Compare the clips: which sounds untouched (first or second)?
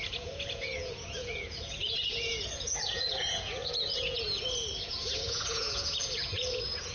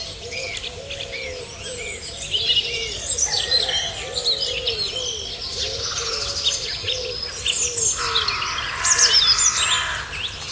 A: second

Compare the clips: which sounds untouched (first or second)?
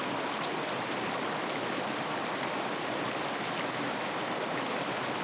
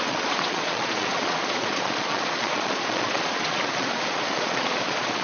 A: first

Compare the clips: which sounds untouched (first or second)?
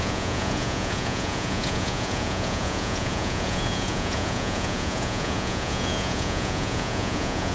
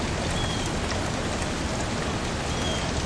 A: second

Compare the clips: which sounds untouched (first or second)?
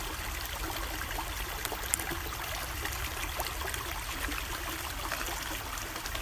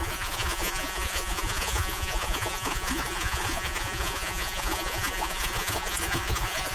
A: first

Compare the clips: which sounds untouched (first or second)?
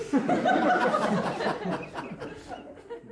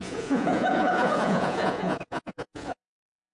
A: first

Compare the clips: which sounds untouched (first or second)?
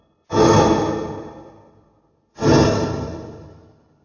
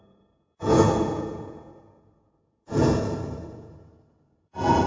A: first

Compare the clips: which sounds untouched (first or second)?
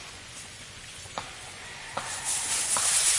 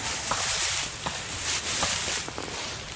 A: second